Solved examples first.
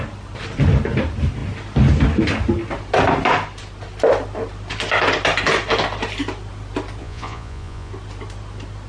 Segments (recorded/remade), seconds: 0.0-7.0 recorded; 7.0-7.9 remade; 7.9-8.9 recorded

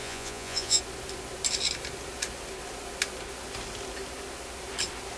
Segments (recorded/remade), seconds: 0.0-0.8 remade; 0.8-5.2 recorded

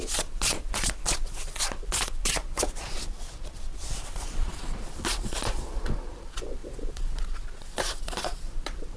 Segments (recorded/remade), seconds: 0.0-9.0 remade

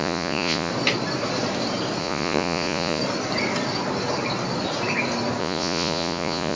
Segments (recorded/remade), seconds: 0.0-0.7 remade; 0.7-2.0 recorded; 2.0-3.0 remade; 3.0-5.4 recorded; 5.4-6.6 remade

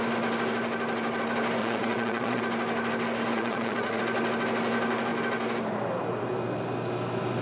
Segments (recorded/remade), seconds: 0.0-1.6 recorded; 1.6-2.4 remade; 2.4-3.3 recorded; 3.3-4.0 remade; 4.0-7.4 recorded

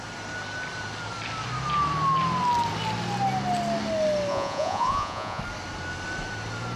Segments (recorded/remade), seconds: 0.0-4.3 recorded; 4.3-5.4 remade; 5.4-6.8 recorded

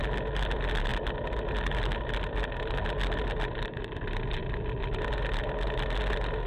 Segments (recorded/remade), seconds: 0.0-6.5 recorded